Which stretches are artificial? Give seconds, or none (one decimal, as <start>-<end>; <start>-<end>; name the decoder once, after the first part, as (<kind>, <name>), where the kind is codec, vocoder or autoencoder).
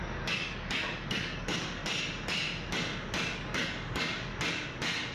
0.0-1.8 (codec, DAC); 3.3-4.3